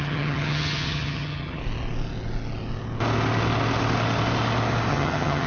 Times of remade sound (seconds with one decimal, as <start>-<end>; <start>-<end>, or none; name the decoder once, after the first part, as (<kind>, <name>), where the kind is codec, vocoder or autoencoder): 0.0-1.6 (vocoder, HiFi-GAN); 4.9-5.5